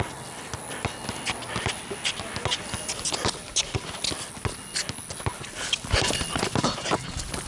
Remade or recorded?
recorded